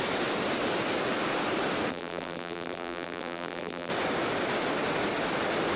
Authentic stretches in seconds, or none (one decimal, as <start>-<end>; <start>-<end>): 0.0-1.9; 3.9-5.8